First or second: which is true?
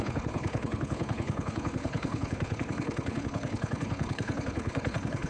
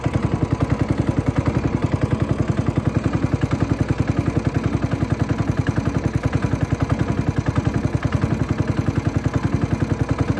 second